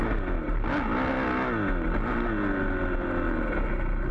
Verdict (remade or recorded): recorded